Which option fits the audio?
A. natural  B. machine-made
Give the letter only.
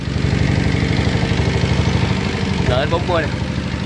A